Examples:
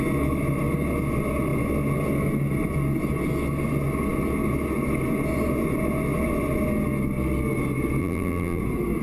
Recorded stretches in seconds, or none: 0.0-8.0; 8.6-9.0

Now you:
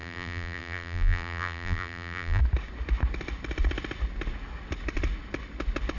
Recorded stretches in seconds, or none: 2.4-6.0

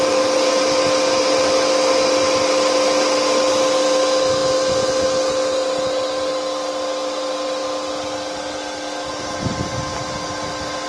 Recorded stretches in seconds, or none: 4.4-6.4; 7.6-9.2

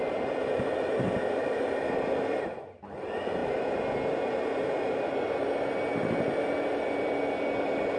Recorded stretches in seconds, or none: 0.0-0.4; 1.5-5.9; 6.7-8.0

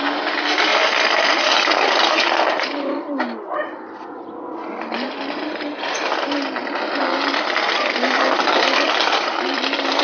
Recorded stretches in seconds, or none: 0.0-7.0